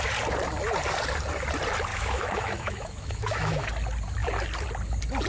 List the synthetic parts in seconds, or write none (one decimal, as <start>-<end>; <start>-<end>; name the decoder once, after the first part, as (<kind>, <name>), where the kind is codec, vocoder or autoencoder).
1.9-3.7 (autoencoder, DAC-VAE)

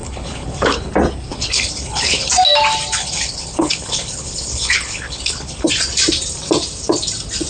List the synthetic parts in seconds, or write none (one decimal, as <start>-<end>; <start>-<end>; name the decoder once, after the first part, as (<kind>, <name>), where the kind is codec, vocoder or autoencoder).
0.0-0.9 (codec, HILCodec); 1.3-2.3; 3.0-5.7

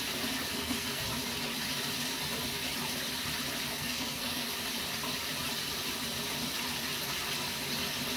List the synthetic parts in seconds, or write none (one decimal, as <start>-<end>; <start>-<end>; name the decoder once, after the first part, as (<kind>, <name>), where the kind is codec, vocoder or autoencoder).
0.5-1.0 (codec, SNAC); 3.7-4.5

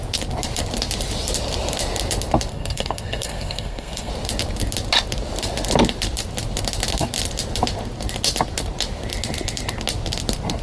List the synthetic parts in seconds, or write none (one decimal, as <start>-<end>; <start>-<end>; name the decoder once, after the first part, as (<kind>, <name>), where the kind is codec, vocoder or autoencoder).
2.5-4.1 (codec, SNAC)

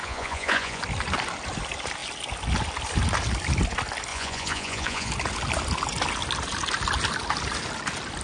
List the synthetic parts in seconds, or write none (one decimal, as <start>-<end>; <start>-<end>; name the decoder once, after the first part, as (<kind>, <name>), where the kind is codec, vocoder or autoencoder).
0.0-0.8 (vocoder, Vocos); 4.1-5.1

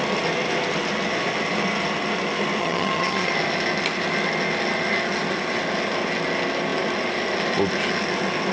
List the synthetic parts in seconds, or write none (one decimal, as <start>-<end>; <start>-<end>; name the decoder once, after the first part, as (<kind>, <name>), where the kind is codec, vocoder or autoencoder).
2.6-3.3 (vocoder, HiFi-GAN)

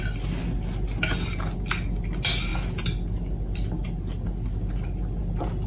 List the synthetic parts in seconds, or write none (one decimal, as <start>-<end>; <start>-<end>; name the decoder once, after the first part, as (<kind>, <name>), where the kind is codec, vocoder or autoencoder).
none

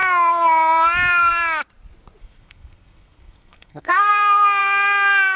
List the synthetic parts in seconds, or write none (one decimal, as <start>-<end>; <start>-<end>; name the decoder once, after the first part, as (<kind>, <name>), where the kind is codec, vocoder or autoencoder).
2.2-4.1 (codec, SNAC)